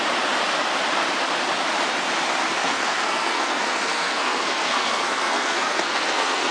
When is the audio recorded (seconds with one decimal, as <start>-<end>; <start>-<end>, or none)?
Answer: 0.0-2.6